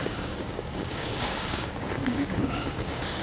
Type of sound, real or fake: fake